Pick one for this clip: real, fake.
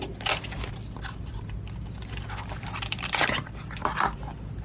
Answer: real